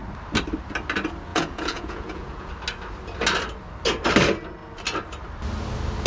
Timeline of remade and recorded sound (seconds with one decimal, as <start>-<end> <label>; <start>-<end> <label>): 0.0-1.3 recorded; 1.3-2.5 remade; 2.5-6.1 recorded